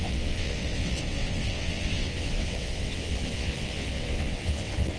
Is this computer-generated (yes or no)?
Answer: yes